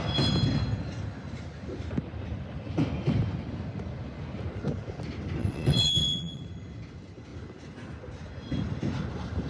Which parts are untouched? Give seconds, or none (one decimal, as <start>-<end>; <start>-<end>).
0.0-5.4; 6.4-9.5